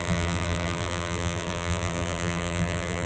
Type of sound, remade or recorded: remade